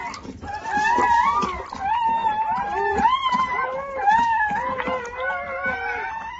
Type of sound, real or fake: real